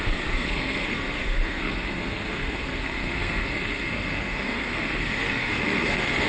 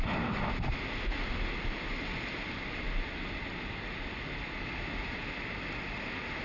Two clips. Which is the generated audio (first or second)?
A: first